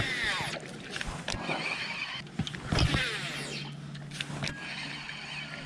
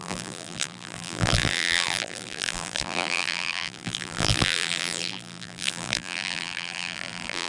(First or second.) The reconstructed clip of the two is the second